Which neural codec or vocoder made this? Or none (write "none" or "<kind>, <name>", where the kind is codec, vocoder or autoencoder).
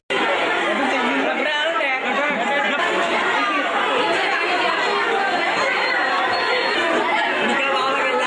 none